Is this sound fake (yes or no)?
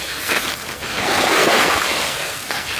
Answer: yes